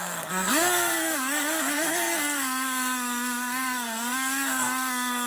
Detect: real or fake fake